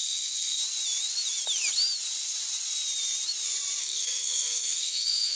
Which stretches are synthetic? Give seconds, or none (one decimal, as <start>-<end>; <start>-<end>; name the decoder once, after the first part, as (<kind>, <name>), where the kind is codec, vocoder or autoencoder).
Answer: 0.0-0.6 (codec, SNAC); 3.8-5.4